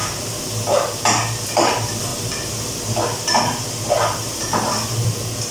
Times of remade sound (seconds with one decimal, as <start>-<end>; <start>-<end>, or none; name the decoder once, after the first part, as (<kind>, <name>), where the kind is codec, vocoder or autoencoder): 0.7-2.1 (vocoder, BigVGAN v2); 4.7-5.5